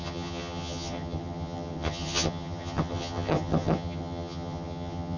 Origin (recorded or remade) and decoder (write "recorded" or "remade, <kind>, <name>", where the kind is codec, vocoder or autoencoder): remade, vocoder, HiFi-GAN